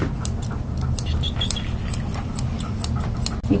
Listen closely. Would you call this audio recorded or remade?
recorded